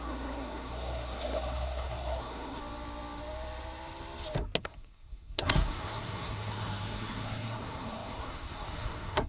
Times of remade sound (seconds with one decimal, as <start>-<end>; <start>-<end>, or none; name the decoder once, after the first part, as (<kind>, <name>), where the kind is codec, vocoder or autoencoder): 0.0-2.6 (codec, SNAC); 4.6-9.3